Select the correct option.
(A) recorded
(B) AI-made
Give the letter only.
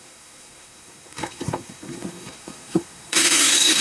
B